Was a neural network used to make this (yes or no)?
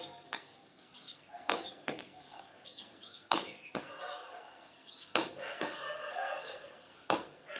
yes